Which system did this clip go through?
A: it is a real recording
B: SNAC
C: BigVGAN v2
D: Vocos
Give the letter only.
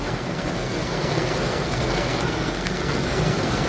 B